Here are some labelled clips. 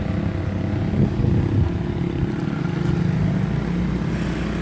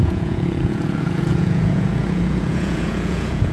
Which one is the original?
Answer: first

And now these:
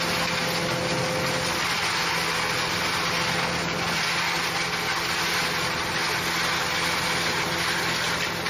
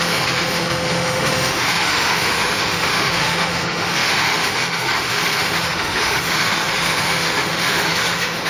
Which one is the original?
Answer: first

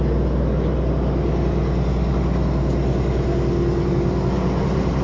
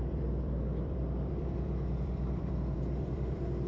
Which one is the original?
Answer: first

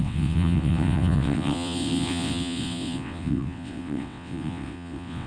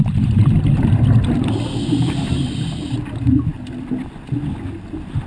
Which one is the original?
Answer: second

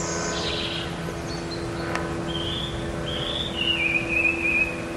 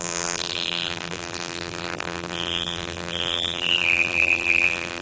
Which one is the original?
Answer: first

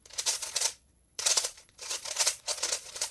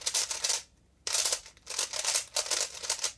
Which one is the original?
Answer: second